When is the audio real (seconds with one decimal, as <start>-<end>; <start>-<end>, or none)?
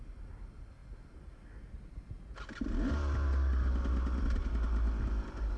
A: 0.0-5.6